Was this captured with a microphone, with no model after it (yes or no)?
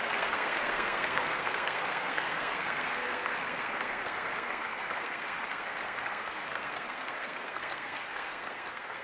no